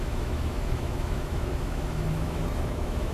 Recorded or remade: remade